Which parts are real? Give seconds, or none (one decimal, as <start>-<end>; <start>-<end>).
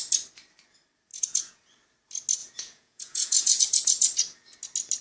0.0-1.1; 1.6-2.4; 3.6-5.0